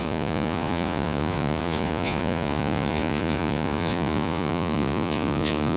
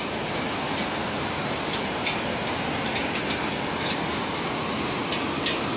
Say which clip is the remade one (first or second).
first